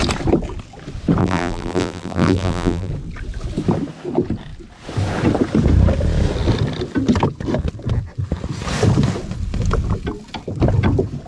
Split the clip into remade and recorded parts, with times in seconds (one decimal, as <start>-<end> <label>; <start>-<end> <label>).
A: 0.0-1.2 recorded; 1.2-2.9 remade; 2.9-11.3 recorded